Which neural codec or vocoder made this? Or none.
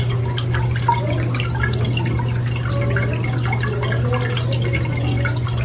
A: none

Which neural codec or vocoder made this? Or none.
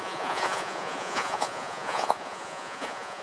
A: vocoder, Vocos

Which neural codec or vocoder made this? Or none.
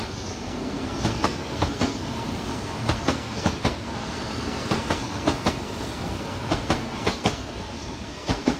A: codec, SNAC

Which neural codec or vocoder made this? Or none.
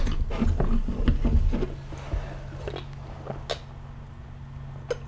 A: none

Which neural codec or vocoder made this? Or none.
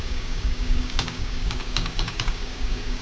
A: codec, DAC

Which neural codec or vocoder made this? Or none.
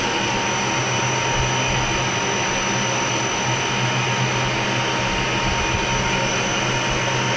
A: none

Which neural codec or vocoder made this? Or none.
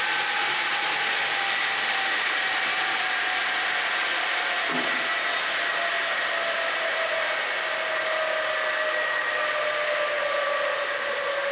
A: none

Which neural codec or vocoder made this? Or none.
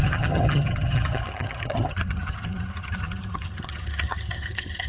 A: vocoder, HiFi-GAN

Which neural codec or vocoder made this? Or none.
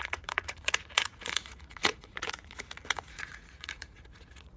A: vocoder, Vocos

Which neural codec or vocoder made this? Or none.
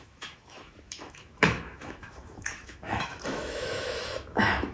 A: autoencoder, DAC-VAE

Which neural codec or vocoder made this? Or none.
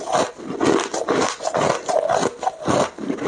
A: none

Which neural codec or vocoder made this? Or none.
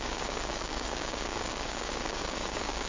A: codec, DAC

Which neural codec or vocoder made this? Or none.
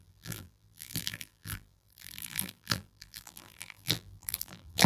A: vocoder, BigVGAN v2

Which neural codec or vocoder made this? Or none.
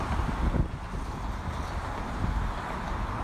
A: none